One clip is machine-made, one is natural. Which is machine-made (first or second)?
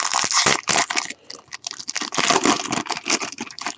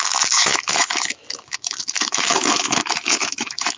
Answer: second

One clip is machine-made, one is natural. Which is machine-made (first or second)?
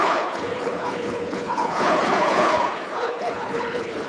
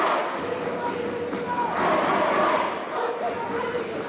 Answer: first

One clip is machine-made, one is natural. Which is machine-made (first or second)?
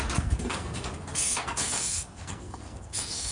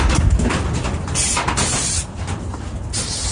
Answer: first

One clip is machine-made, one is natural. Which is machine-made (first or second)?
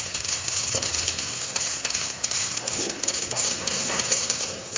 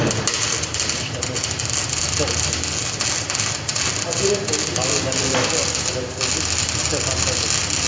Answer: first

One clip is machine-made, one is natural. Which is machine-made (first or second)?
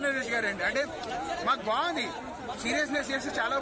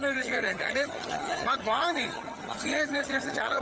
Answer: second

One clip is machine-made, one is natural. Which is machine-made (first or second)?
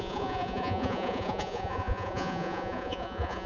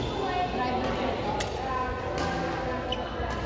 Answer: first